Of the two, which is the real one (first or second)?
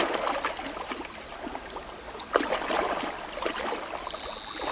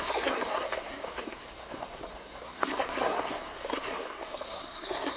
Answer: first